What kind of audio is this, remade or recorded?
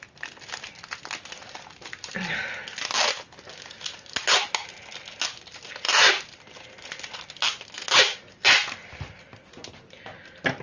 recorded